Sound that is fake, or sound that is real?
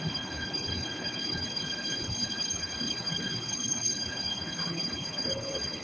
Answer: fake